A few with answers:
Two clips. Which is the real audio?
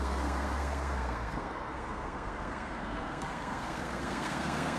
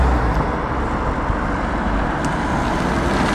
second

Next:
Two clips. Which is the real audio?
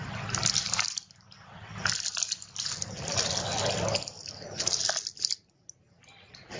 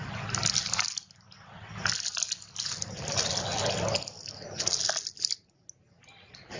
second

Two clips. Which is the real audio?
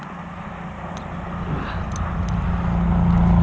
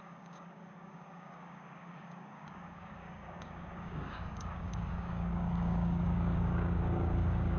first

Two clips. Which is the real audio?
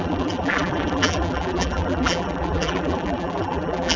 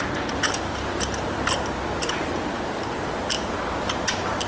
second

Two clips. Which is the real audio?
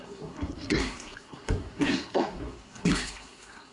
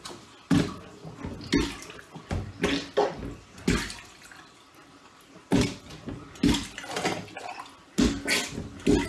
second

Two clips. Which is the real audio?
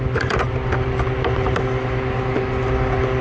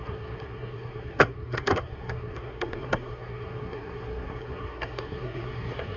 first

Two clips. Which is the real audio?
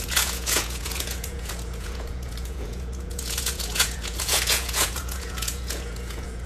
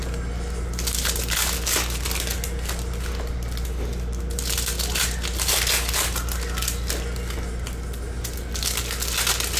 second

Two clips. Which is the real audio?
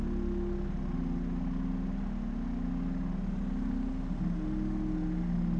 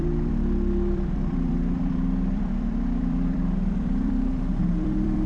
first